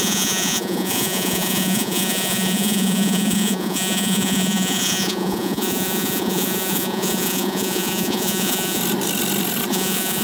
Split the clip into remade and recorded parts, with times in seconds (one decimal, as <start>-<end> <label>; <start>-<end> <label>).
0.0-8.8 remade; 8.8-9.7 recorded; 9.7-10.2 remade